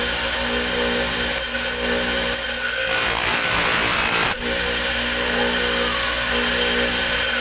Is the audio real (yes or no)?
yes